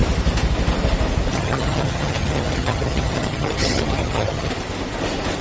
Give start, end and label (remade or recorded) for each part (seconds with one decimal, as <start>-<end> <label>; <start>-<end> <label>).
0.0-1.3 recorded; 1.3-4.5 remade; 4.5-5.4 recorded